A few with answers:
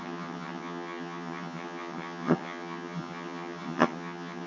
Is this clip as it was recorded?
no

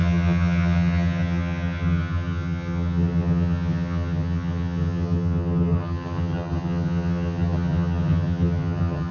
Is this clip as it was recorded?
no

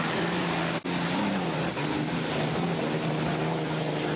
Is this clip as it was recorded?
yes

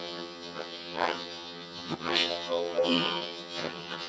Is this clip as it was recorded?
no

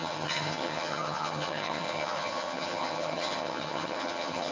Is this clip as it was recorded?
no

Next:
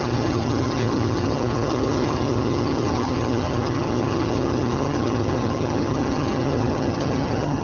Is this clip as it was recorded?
no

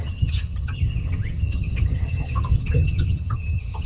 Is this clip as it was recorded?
no